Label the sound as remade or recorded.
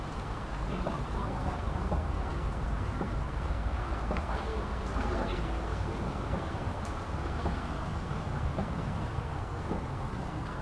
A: remade